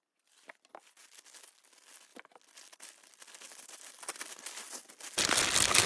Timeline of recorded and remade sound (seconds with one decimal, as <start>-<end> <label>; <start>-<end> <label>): 0.0-5.9 recorded